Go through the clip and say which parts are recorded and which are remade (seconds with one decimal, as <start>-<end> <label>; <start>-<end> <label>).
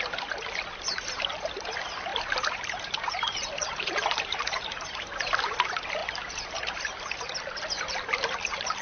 0.0-2.1 recorded; 2.1-5.3 remade; 5.3-8.8 recorded